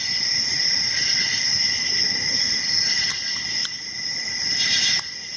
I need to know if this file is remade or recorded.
recorded